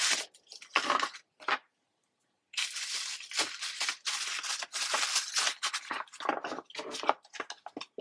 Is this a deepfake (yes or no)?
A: no